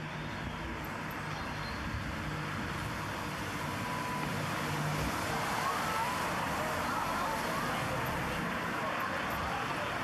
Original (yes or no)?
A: yes